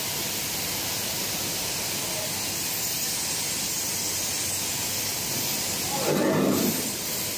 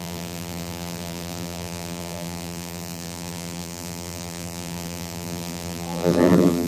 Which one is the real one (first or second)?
first